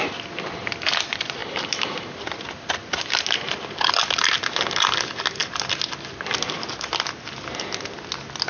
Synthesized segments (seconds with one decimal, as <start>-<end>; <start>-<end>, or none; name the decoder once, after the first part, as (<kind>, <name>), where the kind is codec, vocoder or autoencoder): none